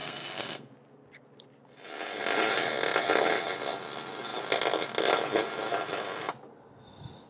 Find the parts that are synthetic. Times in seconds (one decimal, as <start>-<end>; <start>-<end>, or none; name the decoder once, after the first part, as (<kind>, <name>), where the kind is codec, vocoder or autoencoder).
0.0-0.7 (codec, SNAC)